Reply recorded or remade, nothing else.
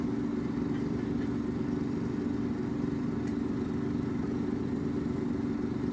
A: recorded